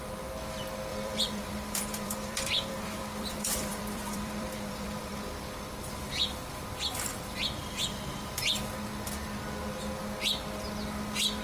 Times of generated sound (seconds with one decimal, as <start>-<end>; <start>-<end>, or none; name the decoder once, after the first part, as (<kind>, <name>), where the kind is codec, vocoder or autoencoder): 0.9-5.3 (vocoder, BigVGAN v2); 7.6-8.5